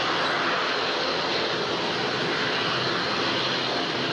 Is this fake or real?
real